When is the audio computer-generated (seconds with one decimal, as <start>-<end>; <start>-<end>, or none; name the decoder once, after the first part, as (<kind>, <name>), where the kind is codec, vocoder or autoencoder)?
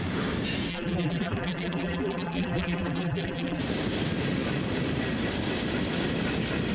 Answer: 0.7-3.6 (vocoder, BigVGAN v2)